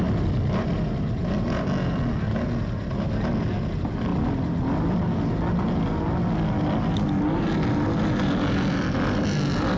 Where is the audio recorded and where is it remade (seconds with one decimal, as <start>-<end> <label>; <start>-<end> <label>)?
0.0-9.8 recorded